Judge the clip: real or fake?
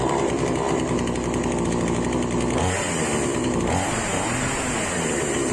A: real